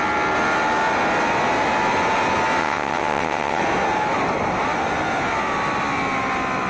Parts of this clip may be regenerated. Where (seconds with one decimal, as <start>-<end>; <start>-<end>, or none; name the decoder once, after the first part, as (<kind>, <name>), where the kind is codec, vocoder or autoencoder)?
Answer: 2.6-3.6 (vocoder, WaveNeXt)